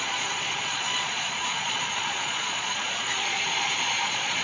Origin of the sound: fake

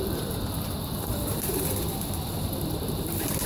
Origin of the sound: real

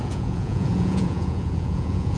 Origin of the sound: fake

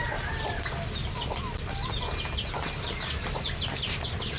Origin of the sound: real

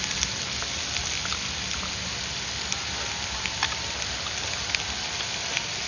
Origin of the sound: real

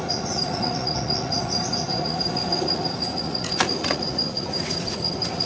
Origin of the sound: fake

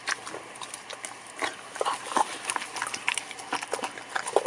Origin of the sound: real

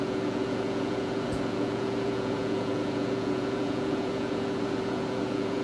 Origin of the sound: fake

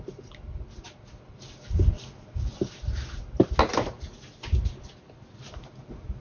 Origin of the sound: real